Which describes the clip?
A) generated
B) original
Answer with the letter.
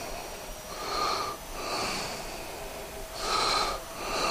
B